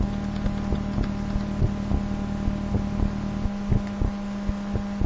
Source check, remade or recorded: recorded